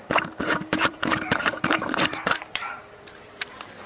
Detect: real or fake fake